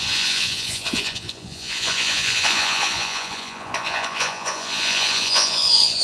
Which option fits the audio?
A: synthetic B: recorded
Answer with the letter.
A